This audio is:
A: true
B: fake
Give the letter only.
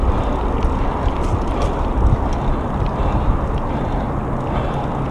A